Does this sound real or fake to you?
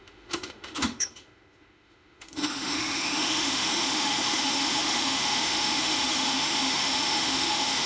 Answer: fake